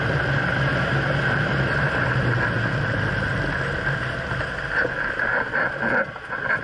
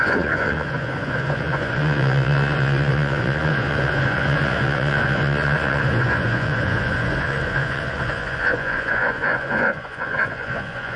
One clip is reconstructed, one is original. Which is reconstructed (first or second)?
second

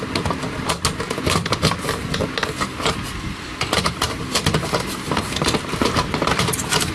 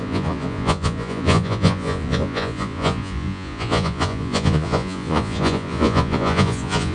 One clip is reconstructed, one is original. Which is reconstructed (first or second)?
second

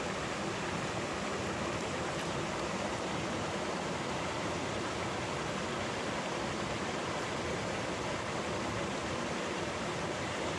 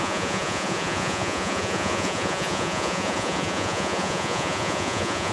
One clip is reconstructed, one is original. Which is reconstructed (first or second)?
second